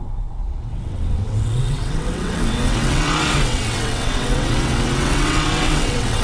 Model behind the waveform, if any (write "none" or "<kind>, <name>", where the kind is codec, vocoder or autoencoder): vocoder, WaveNeXt